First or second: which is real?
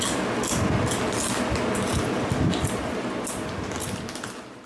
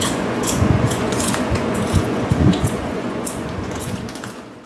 first